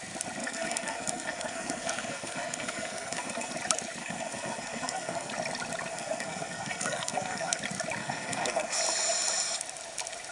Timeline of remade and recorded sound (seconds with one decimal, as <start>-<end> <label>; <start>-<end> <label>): 0.0-0.4 recorded; 0.4-3.5 remade; 3.5-4.0 recorded; 4.0-5.3 remade; 5.3-5.9 recorded; 5.9-7.6 remade; 7.6-8.0 recorded; 8.0-8.8 remade; 8.8-10.3 recorded